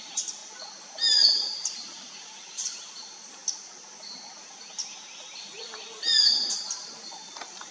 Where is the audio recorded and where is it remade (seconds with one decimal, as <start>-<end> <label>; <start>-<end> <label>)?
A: 0.0-0.4 remade; 0.4-1.5 recorded; 1.5-3.4 remade; 3.4-7.1 recorded; 7.1-7.7 remade